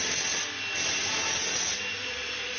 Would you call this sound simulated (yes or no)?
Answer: no